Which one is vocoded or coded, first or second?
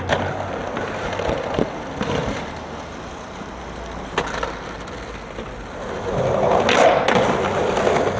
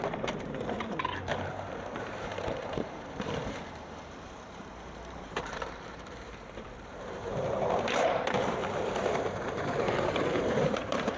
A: second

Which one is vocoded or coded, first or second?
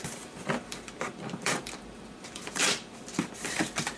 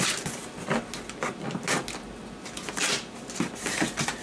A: first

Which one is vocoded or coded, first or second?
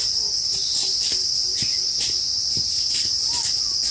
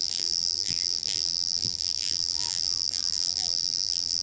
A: second